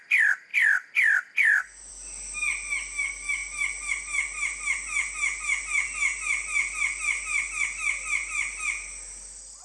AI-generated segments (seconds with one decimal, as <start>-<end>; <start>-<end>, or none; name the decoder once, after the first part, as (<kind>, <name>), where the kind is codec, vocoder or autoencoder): none